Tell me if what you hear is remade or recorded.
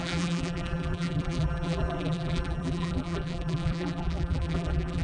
remade